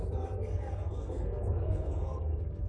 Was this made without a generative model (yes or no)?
no